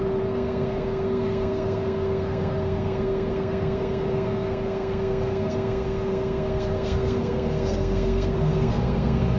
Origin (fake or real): fake